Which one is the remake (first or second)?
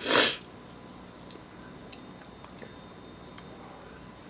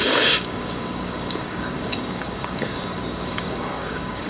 second